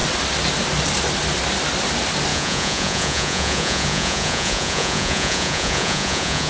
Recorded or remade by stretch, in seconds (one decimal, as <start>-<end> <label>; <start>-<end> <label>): 0.0-2.3 recorded; 2.3-6.5 remade